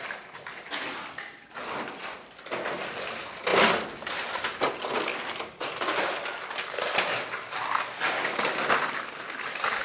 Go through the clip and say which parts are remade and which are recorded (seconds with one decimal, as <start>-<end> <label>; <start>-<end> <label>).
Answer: 0.0-9.8 recorded